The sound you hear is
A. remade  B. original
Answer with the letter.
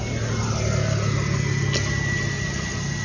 B